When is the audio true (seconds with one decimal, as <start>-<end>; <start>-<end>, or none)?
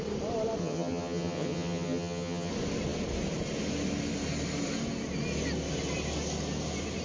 0.0-0.6; 2.5-7.0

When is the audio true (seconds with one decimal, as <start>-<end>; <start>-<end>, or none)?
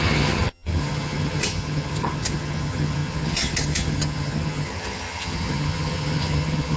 none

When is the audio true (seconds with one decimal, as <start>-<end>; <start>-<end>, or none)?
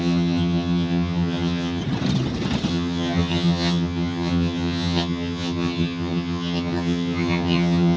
1.8-2.7